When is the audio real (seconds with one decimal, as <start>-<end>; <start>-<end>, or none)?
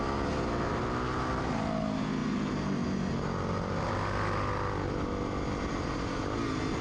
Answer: 0.0-6.8